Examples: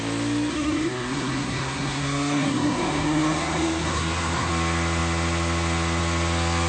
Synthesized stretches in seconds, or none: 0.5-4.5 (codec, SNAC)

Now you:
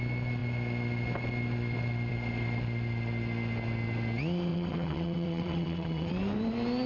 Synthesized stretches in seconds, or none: 4.5-6.1 (vocoder, WaveNeXt)

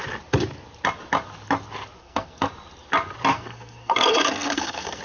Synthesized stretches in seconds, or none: 2.0-2.5 (codec, SNAC); 3.3-5.0

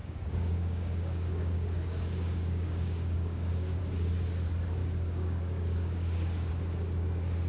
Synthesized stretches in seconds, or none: 0.0-3.8 (codec, DAC); 4.8-6.5

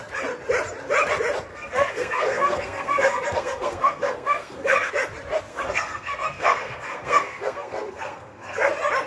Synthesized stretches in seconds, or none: 1.5-4.9 (codec, SNAC); 5.5-8.7

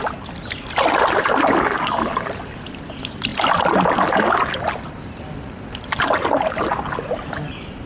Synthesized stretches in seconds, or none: none

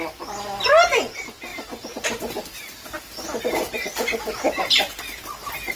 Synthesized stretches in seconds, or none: 1.5-5.0 (vocoder, BigVGAN v2)

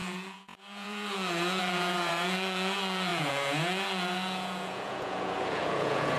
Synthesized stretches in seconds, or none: 0.0-6.2 (vocoder, Vocos)